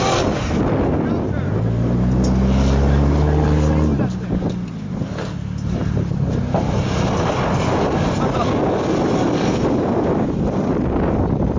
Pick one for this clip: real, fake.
real